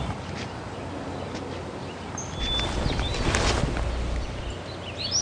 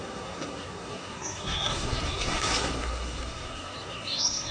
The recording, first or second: first